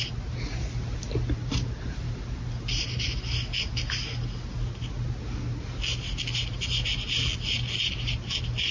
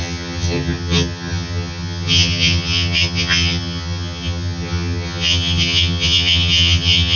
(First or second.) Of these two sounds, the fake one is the second